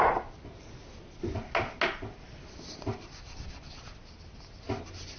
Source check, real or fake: real